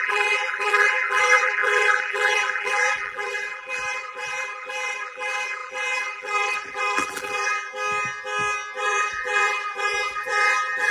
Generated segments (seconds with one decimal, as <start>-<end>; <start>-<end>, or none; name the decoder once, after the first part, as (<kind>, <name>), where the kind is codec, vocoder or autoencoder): 0.0-7.7 (vocoder, BigVGAN v2); 8.8-10.9